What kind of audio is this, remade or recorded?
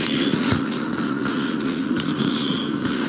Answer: remade